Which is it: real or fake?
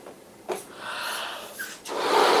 real